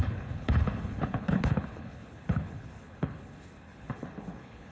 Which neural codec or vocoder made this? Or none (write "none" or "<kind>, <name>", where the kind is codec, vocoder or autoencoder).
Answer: codec, HILCodec